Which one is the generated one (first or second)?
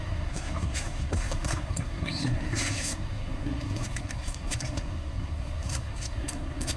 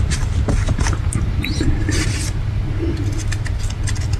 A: first